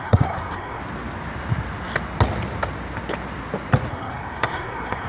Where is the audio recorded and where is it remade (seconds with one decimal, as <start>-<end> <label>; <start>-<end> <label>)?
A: 0.0-0.8 remade; 0.8-3.9 recorded; 3.9-5.1 remade